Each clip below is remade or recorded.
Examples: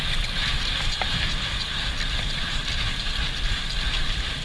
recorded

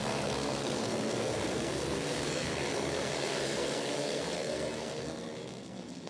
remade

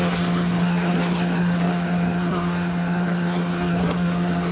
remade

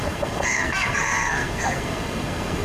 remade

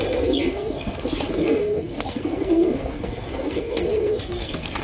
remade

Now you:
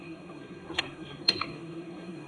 remade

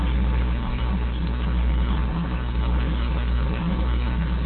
remade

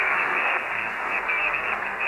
remade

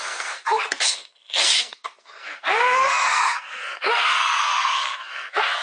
remade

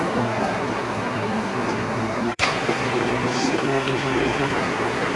remade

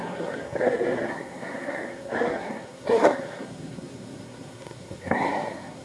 remade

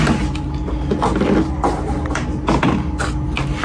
recorded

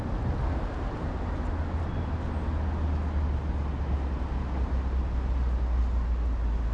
recorded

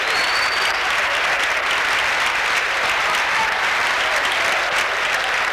recorded